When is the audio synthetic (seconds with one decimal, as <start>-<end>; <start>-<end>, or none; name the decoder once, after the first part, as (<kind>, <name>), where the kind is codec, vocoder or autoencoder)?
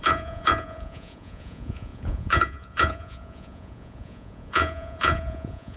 0.0-5.8 (vocoder, Vocos)